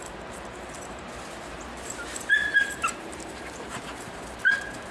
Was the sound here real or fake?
fake